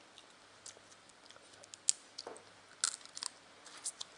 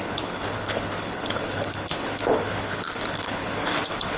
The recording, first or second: first